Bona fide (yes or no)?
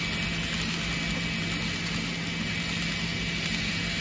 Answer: yes